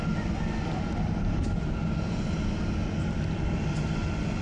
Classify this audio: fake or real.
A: real